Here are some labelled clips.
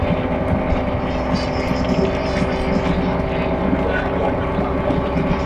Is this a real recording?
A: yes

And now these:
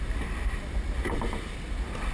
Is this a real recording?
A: yes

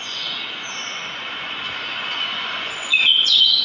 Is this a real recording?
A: no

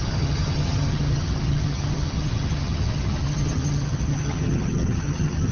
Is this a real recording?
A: no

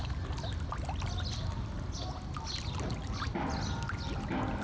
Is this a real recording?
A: yes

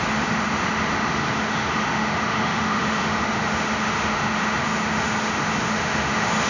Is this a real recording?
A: no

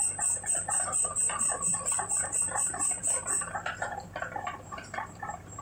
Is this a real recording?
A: no